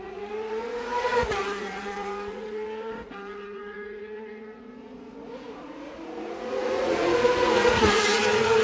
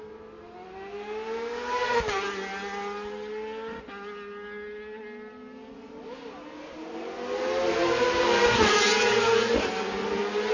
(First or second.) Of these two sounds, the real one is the second